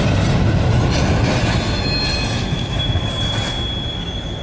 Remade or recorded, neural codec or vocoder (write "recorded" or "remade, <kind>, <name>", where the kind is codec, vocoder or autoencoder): recorded